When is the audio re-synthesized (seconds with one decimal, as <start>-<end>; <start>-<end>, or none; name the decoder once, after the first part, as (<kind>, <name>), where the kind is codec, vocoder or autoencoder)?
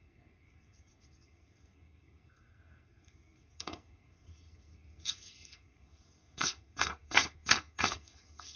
0.0-8.6 (codec, SNAC)